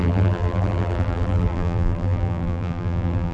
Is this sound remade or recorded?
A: remade